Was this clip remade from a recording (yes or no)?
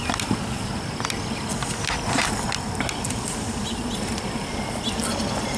no